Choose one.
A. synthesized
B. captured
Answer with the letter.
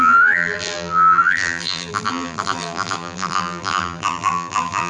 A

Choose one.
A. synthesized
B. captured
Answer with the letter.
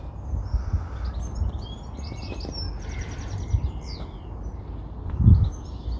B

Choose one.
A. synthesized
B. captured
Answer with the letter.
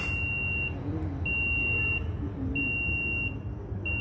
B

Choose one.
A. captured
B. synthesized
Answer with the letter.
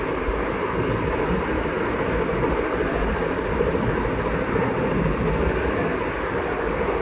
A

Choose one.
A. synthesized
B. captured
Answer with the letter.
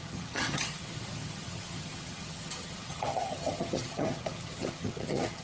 A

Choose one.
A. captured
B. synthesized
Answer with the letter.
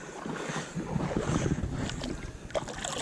A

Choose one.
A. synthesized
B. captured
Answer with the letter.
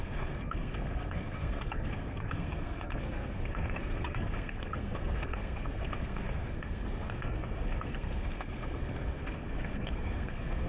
A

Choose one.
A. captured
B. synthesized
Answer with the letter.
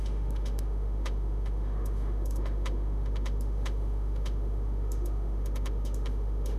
B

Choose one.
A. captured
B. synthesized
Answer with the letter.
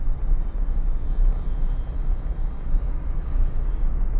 A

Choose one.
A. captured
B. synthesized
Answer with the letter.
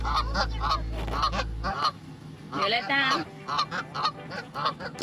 A